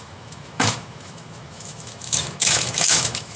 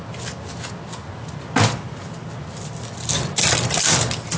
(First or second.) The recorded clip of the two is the second